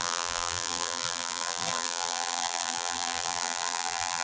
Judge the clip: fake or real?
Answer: fake